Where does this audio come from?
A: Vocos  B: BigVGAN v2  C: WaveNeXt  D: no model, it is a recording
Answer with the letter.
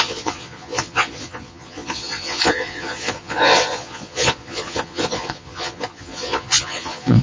A